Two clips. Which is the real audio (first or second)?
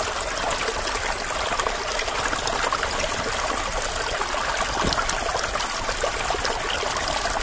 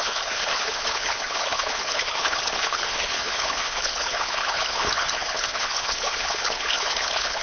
first